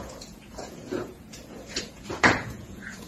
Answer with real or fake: fake